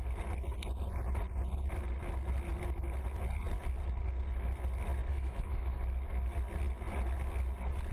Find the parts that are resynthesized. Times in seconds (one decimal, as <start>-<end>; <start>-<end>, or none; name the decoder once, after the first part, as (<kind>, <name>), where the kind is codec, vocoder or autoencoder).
5.1-5.8 (autoencoder, DAC-VAE)